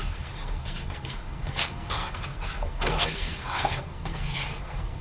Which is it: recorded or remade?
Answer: remade